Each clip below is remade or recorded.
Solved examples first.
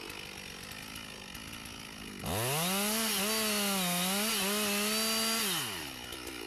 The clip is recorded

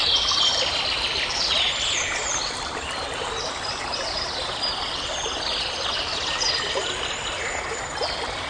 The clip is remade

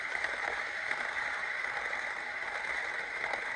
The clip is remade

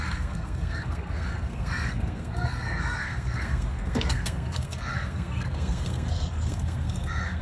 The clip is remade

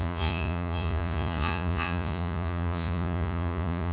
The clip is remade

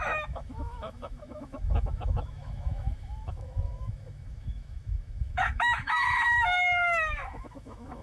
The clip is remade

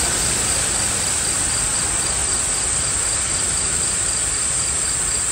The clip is recorded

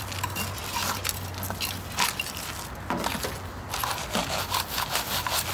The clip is recorded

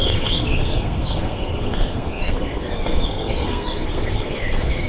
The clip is remade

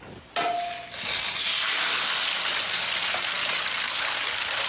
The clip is recorded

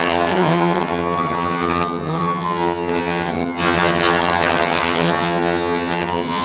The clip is remade